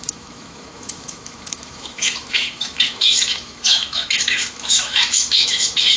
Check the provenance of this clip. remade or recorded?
remade